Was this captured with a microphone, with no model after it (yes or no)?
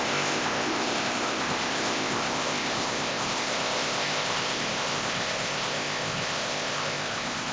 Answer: no